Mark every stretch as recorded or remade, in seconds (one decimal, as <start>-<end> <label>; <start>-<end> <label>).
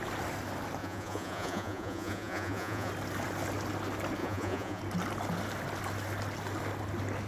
0.0-0.8 recorded; 0.8-2.9 remade; 2.9-4.2 recorded; 4.2-4.8 remade; 4.8-7.3 recorded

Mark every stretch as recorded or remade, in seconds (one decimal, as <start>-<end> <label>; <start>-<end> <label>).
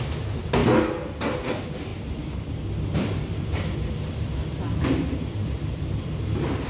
0.0-0.6 remade; 0.6-1.5 recorded; 1.5-6.7 remade